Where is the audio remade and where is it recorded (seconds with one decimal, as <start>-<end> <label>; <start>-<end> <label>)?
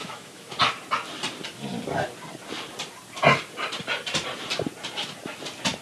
0.0-0.5 remade; 0.5-5.8 recorded